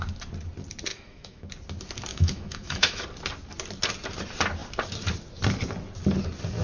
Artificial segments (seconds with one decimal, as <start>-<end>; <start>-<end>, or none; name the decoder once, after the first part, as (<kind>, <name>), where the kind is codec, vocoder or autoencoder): 0.9-1.5 (autoencoder, DAC-VAE); 2.1-3.0